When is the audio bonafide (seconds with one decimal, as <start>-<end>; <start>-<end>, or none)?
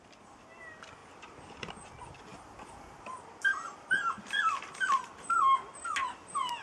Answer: 0.0-1.0; 1.9-2.3